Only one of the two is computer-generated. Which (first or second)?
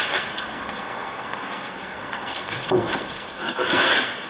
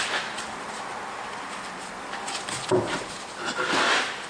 first